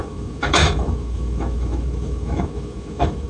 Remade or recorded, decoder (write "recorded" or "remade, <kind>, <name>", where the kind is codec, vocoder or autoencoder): remade, autoencoder, DAC-VAE